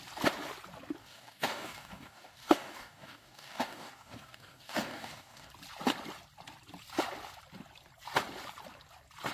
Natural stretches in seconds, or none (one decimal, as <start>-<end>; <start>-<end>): 0.0-1.0; 5.5-9.3